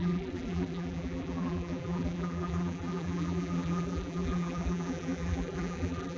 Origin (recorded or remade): remade